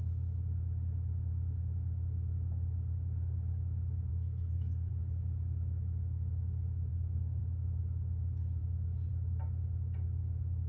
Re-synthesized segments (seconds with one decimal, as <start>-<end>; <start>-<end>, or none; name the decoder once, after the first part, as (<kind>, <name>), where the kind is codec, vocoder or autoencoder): 4.1-4.9 (codec, SNAC); 6.9-7.4

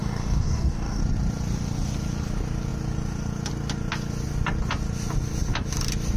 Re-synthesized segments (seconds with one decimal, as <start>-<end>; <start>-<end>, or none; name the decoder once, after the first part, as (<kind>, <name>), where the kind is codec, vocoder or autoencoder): 0.0-1.0 (codec, DAC)